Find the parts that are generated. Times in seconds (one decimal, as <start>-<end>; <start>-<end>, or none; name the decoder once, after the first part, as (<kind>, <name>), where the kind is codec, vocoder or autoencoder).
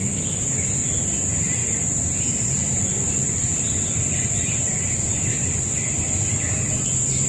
1.6-2.3 (vocoder, BigVGAN v2)